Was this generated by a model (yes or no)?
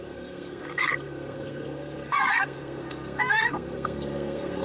yes